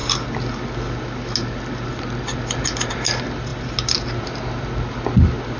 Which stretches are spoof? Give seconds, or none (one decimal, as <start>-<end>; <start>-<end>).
none